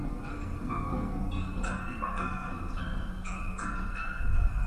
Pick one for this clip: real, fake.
fake